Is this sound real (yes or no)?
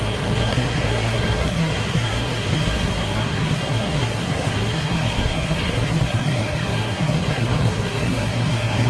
no